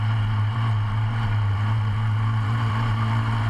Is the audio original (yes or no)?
no